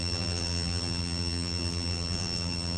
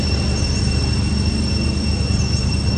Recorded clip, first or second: second